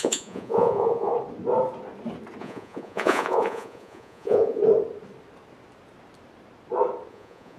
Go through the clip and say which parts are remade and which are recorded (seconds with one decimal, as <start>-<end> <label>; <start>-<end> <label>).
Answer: 0.0-1.1 remade; 1.1-2.4 recorded; 2.4-4.6 remade; 4.6-7.1 recorded; 7.1-7.6 remade